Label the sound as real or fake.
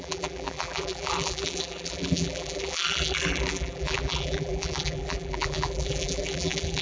fake